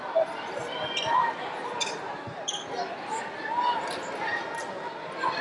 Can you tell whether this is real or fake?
real